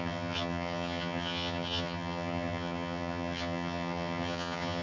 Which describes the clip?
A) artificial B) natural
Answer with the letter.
A